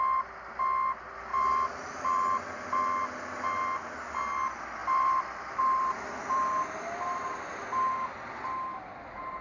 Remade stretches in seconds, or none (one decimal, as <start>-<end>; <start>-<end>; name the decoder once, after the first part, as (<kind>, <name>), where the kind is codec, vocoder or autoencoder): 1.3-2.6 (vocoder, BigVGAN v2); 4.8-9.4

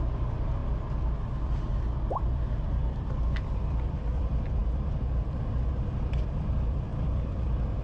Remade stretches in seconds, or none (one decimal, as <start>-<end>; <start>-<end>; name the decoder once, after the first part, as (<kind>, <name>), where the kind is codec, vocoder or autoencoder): 0.0-7.8 (vocoder, BigVGAN v2)

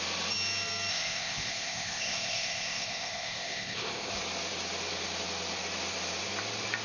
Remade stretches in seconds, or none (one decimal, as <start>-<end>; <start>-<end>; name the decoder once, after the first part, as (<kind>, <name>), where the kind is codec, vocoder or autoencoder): 0.9-4.1 (codec, ZipCodec)